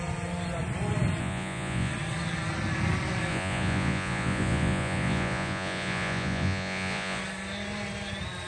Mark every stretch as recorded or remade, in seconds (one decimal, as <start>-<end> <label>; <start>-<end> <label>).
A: 0.0-1.2 recorded; 1.2-1.9 remade; 1.9-3.3 recorded; 3.3-7.2 remade; 7.2-8.5 recorded